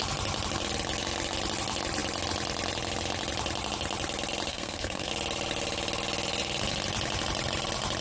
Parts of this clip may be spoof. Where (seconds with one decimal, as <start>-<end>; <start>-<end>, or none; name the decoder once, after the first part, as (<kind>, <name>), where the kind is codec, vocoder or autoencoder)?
4.5-5.1 (codec, SNAC)